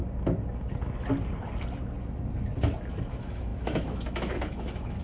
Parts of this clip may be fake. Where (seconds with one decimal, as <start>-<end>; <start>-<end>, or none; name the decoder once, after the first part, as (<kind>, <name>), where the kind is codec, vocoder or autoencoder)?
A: 2.9-5.0 (autoencoder, DAC-VAE)